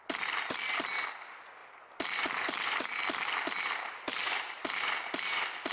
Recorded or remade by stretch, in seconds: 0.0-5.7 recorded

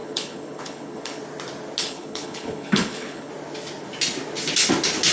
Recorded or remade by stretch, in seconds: 0.0-1.2 remade; 1.2-1.8 recorded; 1.8-3.3 remade; 3.3-5.1 recorded

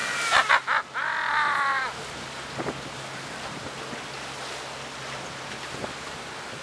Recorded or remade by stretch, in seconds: 0.0-6.6 recorded

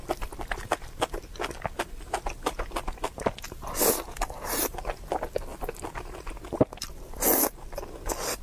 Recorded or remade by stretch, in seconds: 0.0-8.4 recorded

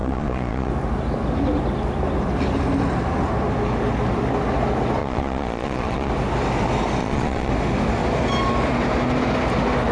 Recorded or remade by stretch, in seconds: 0.0-0.7 remade; 0.7-5.0 recorded; 5.0-6.1 remade; 6.1-7.0 recorded; 7.0-7.5 remade; 7.5-9.9 recorded

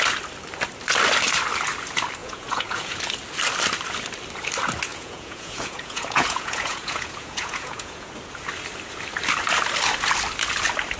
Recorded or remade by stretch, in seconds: 0.0-2.2 recorded; 2.2-3.0 remade; 3.0-4.9 recorded; 4.9-8.1 remade; 8.1-11.0 recorded